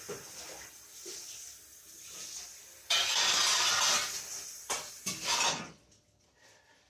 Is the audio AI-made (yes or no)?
no